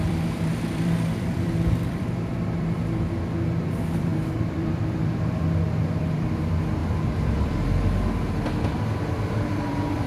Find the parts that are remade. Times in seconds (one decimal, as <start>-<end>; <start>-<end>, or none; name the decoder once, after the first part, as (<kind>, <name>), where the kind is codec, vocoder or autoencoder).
0.0-6.8 (vocoder, BigVGAN v2); 9.3-10.1